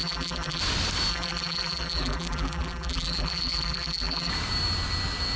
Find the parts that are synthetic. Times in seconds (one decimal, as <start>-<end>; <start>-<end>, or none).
0.0-0.6; 1.1-4.3